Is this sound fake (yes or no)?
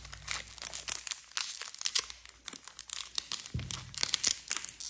no